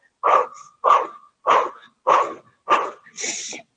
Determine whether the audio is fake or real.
real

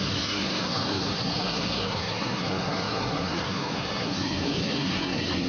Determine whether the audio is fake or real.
fake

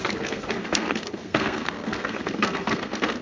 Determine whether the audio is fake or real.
fake